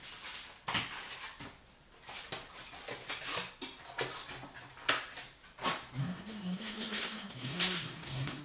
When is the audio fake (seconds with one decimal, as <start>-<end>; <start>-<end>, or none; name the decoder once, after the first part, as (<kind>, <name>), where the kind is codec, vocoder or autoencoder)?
6.0-8.4 (codec, SNAC)